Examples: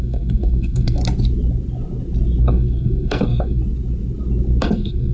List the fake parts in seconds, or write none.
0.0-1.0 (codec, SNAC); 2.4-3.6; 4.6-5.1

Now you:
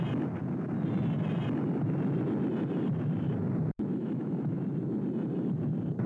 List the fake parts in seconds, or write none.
3.9-4.6 (autoencoder, DAC-VAE)

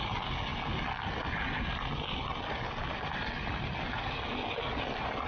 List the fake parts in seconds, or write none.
none

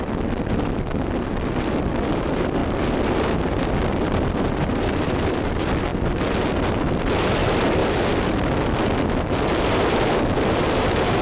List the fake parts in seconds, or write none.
0.0-7.8 (vocoder, BigVGAN v2); 9.6-11.2